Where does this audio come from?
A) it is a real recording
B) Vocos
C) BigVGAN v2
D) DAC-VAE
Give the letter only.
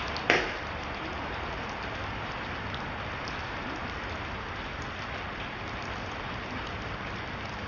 A